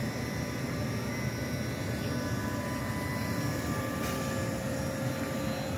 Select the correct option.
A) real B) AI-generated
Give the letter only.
A